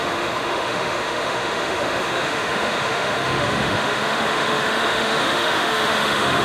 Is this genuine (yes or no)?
no